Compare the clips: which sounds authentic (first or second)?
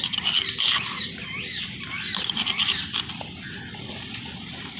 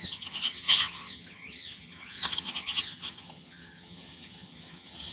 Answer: first